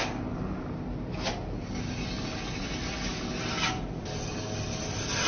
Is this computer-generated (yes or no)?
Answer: no